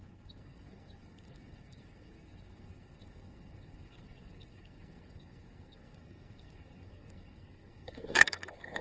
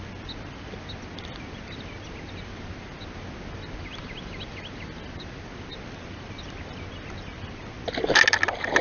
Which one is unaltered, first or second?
second